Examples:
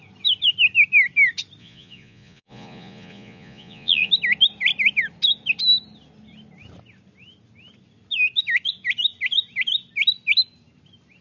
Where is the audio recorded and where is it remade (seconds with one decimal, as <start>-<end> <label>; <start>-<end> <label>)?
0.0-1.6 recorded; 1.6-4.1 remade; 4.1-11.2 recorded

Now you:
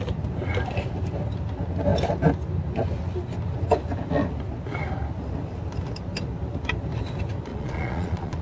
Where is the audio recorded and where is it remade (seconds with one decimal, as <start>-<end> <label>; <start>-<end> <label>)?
0.0-7.5 recorded; 7.5-8.4 remade

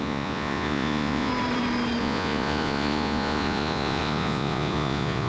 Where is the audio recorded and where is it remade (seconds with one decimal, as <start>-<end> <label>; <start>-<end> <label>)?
0.0-1.3 remade; 1.3-2.0 recorded; 2.0-5.3 remade